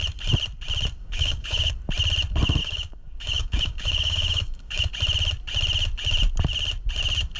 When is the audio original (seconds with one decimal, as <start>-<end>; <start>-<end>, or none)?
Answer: 0.0-1.0; 1.7-2.6; 4.9-7.4